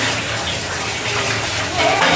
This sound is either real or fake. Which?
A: real